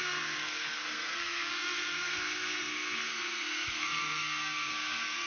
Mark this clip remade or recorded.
remade